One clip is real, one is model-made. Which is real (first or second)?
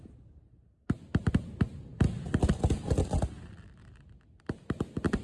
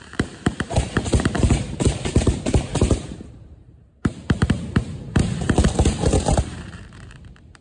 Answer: first